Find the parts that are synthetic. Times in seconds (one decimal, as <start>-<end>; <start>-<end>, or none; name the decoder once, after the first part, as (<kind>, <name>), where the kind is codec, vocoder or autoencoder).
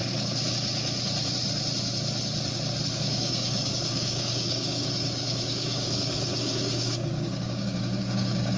2.9-8.6 (codec, DAC)